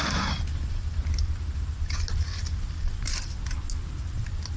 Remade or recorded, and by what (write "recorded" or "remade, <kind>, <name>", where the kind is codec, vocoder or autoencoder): recorded